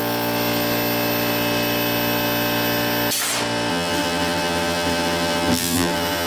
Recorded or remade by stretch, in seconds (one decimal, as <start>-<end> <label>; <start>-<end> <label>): 0.0-3.7 recorded; 3.7-6.3 remade